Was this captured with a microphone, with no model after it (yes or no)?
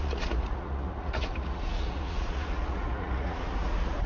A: no